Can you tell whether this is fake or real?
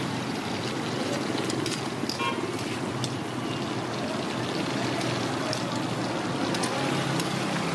real